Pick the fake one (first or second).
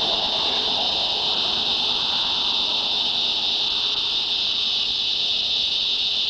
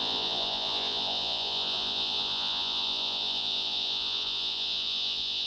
second